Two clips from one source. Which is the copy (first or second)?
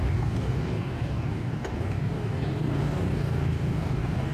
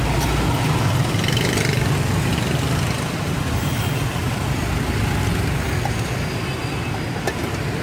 first